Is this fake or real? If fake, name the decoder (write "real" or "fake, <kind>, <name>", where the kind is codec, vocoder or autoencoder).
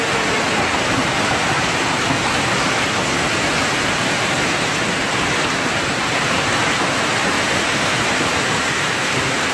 real